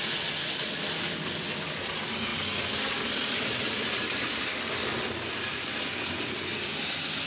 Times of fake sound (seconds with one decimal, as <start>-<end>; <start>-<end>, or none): none